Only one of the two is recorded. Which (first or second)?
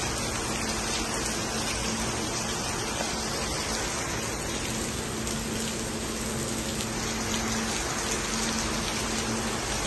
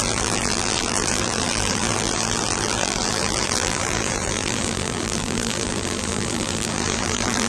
first